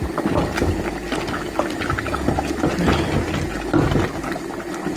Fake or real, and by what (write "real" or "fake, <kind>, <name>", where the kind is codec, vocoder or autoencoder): real